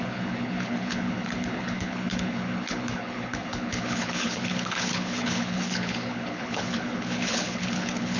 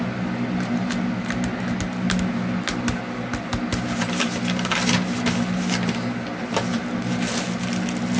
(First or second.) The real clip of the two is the second